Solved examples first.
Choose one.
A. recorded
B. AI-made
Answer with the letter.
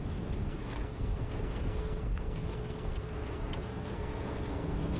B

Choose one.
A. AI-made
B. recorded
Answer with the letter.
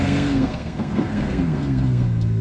A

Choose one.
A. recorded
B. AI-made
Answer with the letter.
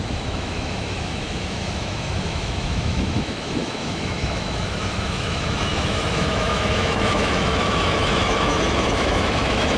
B